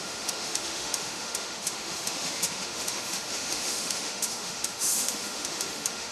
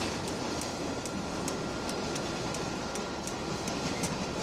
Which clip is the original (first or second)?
second